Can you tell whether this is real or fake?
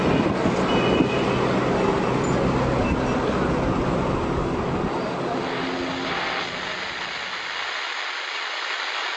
real